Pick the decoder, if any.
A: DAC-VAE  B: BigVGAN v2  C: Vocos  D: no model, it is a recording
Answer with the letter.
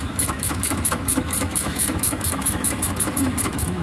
A